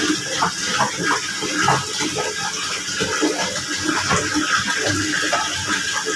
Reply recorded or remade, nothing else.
recorded